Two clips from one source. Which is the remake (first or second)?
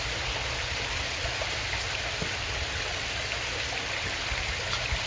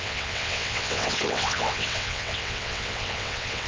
second